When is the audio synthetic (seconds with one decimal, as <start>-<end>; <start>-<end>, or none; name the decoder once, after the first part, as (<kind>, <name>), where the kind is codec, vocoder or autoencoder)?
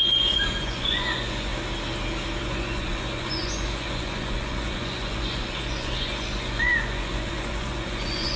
0.0-1.5 (vocoder, Vocos); 2.4-8.4